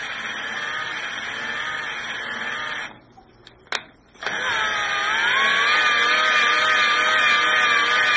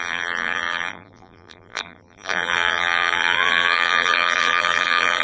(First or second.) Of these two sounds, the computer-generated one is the second